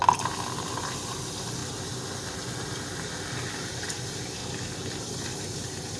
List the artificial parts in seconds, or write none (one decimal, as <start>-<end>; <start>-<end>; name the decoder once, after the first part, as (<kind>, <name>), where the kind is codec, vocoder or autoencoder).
0.8-1.6 (vocoder, BigVGAN v2); 3.6-4.4; 5.0-6.0